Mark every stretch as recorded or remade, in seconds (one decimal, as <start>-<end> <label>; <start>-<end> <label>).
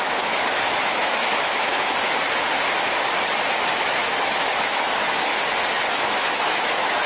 0.0-1.7 remade; 1.7-3.7 recorded; 3.7-5.3 remade; 5.3-5.9 recorded; 5.9-7.1 remade